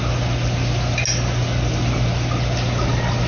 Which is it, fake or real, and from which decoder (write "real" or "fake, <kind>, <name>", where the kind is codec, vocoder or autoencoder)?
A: real